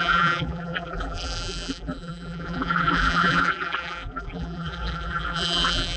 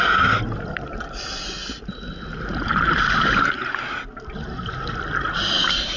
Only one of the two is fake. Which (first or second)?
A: first